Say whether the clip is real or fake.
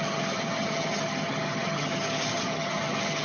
fake